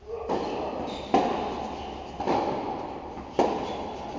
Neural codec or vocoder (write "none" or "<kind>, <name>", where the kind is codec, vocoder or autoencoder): none